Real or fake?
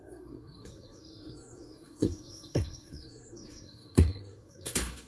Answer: fake